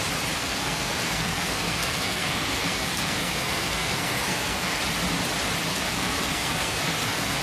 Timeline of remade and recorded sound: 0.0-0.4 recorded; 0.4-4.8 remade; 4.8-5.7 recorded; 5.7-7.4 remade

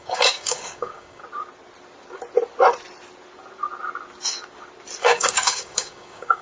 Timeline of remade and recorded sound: 0.0-1.2 remade; 1.2-5.0 recorded; 5.0-6.4 remade

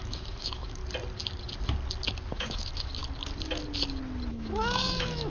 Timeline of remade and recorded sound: 0.0-0.8 remade; 0.8-2.3 recorded; 2.3-3.0 remade; 3.0-4.3 recorded; 4.3-5.3 remade